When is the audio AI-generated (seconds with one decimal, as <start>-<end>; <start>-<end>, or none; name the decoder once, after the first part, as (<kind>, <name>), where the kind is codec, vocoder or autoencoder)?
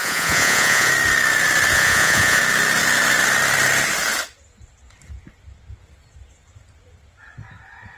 0.0-0.9 (vocoder, Vocos); 1.7-2.4